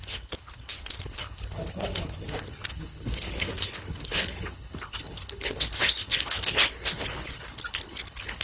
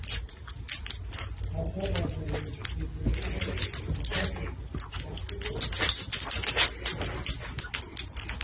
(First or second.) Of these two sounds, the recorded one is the second